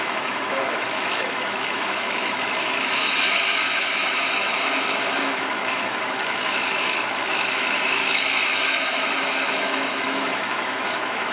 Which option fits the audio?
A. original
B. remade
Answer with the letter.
B